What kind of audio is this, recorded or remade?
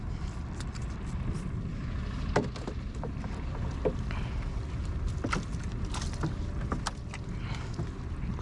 recorded